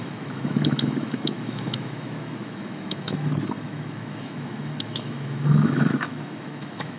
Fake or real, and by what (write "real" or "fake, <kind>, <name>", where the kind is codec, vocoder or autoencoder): fake, autoencoder, DAC-VAE